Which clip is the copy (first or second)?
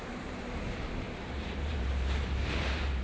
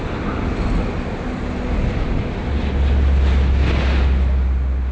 first